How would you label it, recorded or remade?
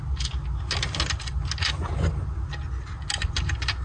recorded